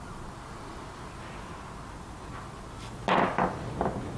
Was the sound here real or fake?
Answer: real